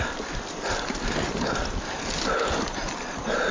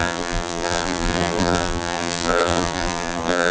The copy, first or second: second